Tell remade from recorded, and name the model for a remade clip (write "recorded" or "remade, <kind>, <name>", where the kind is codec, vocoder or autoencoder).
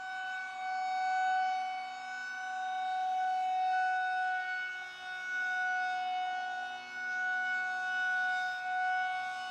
recorded